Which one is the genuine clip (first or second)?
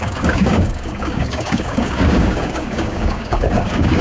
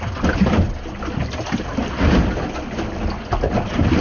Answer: second